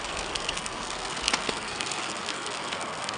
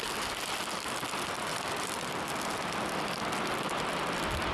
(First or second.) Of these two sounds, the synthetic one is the first